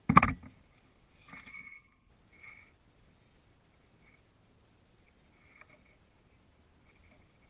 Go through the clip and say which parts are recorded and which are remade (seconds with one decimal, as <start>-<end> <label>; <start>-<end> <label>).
0.0-1.5 recorded; 1.5-2.1 remade; 2.1-7.5 recorded